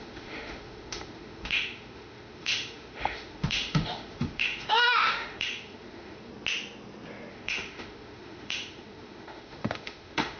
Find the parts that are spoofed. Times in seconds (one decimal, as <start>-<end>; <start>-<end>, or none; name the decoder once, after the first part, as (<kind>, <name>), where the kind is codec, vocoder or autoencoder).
0.0-6.3 (autoencoder, DAC-VAE); 7.3-10.4